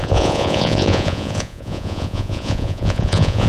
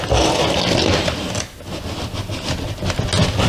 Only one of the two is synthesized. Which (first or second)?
first